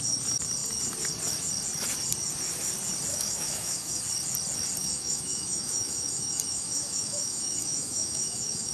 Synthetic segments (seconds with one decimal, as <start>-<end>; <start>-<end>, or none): 3.1-4.0; 4.8-8.7